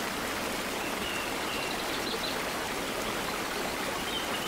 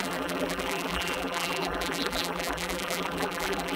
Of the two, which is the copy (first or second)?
second